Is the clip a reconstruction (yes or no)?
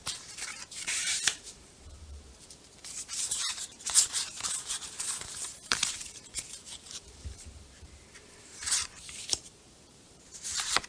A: yes